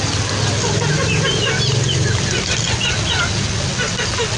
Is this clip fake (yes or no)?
no